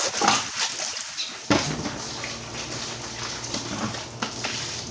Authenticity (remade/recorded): recorded